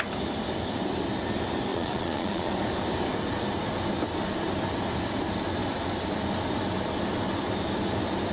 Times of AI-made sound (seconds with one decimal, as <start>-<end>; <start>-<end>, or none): 1.7-2.5